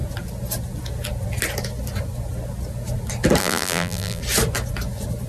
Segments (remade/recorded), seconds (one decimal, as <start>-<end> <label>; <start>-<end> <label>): 0.0-3.4 recorded; 3.4-4.2 remade; 4.2-5.3 recorded